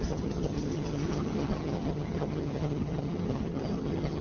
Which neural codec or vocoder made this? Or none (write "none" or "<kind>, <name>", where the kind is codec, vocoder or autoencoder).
vocoder, HiFi-GAN